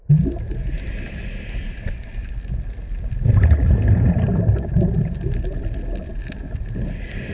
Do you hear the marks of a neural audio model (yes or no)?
no